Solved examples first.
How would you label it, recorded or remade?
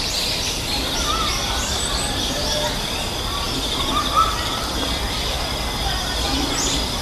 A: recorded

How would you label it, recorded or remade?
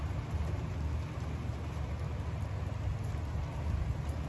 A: recorded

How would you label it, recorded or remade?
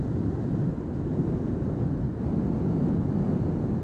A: recorded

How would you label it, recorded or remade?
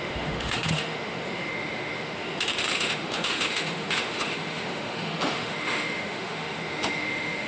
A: remade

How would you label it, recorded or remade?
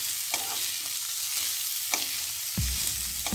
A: recorded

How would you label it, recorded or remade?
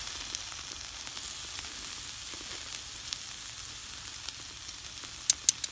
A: recorded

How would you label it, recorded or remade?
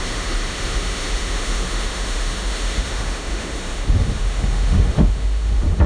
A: remade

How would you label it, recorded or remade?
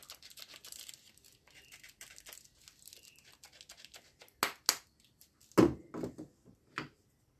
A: recorded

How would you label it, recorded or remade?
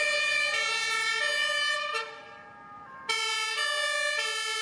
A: recorded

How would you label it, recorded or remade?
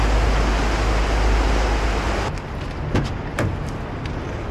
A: recorded